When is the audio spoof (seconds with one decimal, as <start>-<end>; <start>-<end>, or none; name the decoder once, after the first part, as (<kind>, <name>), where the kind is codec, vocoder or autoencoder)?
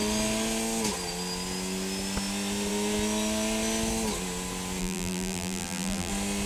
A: 4.8-6.1 (vocoder, BigVGAN v2)